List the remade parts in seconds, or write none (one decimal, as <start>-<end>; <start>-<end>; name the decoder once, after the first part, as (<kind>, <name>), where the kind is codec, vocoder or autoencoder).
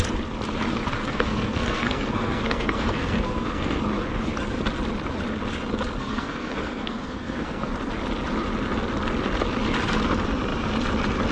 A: 1.0-3.8 (codec, SNAC); 6.0-7.7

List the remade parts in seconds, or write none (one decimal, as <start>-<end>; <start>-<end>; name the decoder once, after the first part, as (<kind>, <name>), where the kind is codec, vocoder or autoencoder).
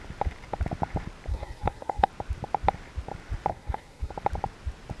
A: 1.3-2.1 (codec, SNAC); 3.5-4.1